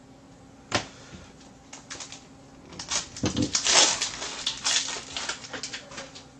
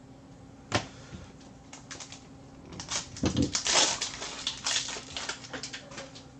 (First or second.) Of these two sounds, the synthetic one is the second